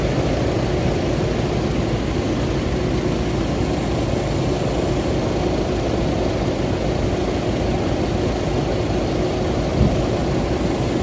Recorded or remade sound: recorded